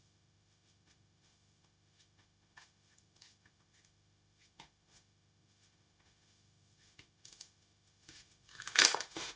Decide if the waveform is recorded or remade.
remade